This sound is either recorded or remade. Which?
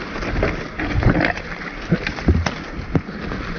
recorded